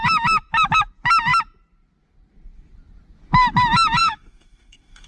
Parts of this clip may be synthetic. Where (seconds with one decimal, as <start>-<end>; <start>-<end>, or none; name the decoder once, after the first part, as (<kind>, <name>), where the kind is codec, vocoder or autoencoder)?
4.0-5.1 (autoencoder, DAC-VAE)